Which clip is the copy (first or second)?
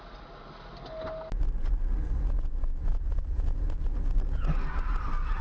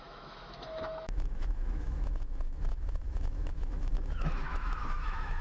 second